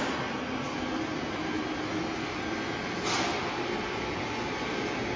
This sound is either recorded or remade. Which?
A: recorded